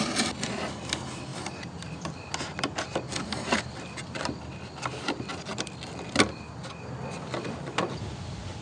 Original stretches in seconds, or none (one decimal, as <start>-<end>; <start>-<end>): 0.0-1.3; 2.1-2.9; 4.6-5.3; 5.9-8.6